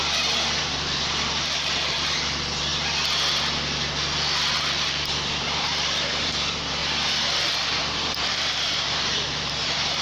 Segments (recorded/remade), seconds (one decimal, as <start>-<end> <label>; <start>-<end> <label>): 0.0-0.6 recorded; 0.6-2.7 remade; 2.7-4.6 recorded; 4.6-6.8 remade; 6.8-7.5 recorded; 7.5-10.0 remade